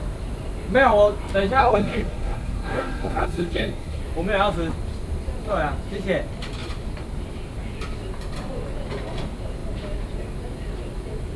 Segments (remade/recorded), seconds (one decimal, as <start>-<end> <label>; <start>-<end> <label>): 0.0-1.6 recorded; 1.6-4.0 remade; 4.0-11.4 recorded